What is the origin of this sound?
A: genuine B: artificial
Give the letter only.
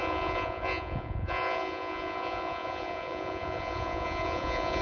B